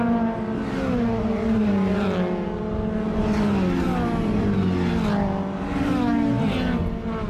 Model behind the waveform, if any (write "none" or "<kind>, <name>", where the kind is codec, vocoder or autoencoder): none